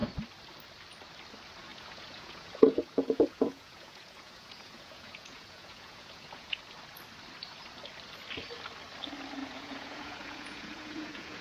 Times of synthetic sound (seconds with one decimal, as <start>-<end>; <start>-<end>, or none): 1.7-6.6; 9.4-11.4